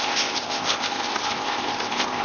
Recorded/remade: remade